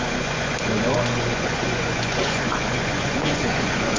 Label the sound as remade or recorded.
remade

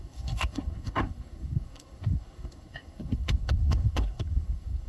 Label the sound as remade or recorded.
remade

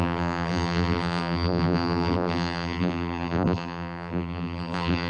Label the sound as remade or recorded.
remade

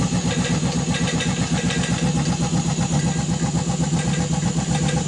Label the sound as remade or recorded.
recorded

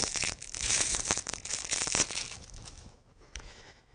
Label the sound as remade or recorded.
remade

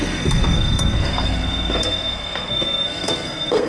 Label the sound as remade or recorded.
remade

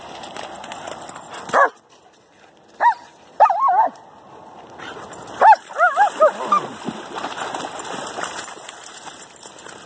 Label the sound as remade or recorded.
recorded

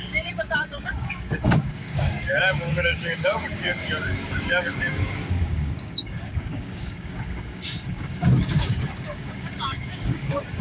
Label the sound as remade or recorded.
remade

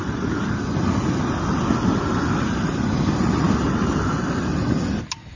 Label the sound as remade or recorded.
recorded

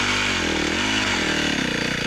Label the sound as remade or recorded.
recorded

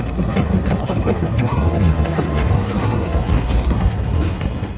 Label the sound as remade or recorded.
remade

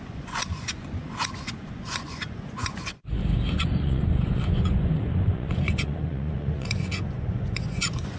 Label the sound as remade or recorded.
remade